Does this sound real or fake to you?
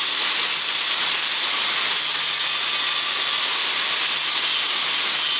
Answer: real